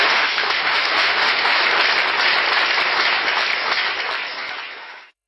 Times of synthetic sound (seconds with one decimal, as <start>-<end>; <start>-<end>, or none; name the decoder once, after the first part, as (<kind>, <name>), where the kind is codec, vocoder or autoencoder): 0.0-1.6 (autoencoder, DAC-VAE); 4.8-5.3